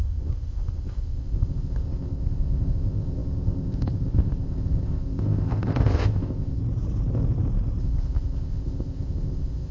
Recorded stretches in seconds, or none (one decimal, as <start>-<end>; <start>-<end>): 6.6-7.8